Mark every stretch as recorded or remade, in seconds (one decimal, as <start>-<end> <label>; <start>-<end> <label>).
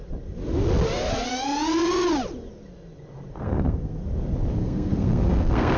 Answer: 0.0-3.3 recorded; 3.3-4.0 remade; 4.0-4.6 recorded; 4.6-5.8 remade